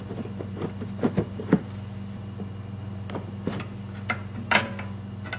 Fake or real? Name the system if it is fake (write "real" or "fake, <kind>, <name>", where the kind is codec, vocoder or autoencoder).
real